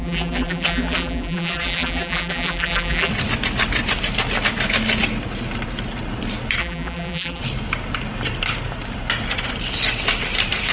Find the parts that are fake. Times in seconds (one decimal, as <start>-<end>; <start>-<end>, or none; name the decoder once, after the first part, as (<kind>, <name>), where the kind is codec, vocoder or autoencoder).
0.0-3.1 (vocoder, BigVGAN v2); 6.6-7.4